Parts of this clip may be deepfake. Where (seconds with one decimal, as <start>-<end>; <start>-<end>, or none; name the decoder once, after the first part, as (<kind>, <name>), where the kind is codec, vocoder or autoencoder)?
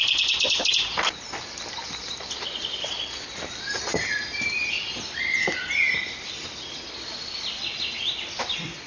none